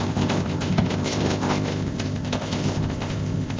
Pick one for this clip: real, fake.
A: fake